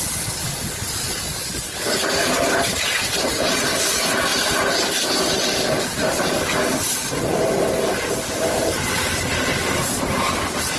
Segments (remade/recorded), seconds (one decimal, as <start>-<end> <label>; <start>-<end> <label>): 0.0-4.3 recorded; 4.3-6.5 remade; 6.5-10.8 recorded